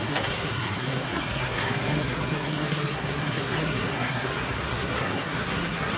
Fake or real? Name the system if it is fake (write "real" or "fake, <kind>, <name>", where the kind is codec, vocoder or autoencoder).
fake, codec, SNAC